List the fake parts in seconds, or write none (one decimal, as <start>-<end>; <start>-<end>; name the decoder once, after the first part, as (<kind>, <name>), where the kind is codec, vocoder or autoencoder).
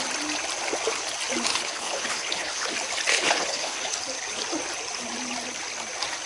1.5-2.7 (codec, HILCodec); 3.1-4.0